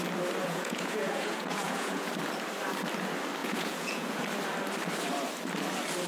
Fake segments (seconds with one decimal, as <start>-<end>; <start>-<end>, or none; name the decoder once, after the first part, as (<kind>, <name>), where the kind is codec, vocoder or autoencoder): 0.4-2.1 (vocoder, Vocos); 3.4-4.2